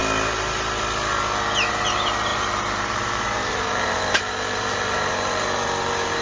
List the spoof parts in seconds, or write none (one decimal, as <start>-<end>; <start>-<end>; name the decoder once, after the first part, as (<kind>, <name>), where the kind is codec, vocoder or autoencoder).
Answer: 1.7-6.2 (vocoder, BigVGAN v2)